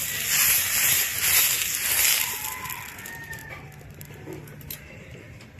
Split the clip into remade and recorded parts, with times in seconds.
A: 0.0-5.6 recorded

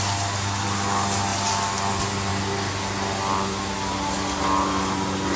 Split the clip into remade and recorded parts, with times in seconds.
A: 0.0-5.4 recorded

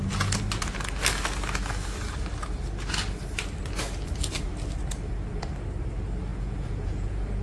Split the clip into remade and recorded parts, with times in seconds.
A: 0.0-6.3 recorded; 6.3-7.4 remade

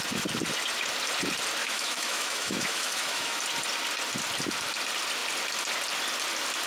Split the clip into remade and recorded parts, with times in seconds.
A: 0.0-1.6 recorded; 1.6-3.4 remade; 3.4-6.7 recorded

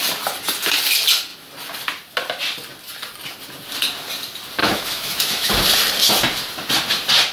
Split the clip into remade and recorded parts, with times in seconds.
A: 0.0-4.6 recorded; 4.6-5.5 remade; 5.5-7.3 recorded

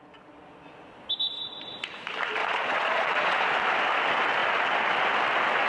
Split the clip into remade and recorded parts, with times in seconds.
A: 0.0-2.4 recorded; 2.4-3.5 remade; 3.5-5.7 recorded

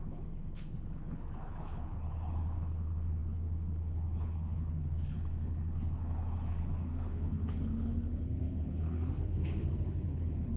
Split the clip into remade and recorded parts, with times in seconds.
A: 0.0-10.6 remade

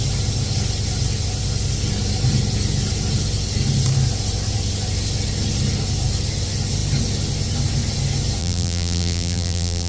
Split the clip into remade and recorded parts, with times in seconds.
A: 0.0-8.4 recorded; 8.4-9.9 remade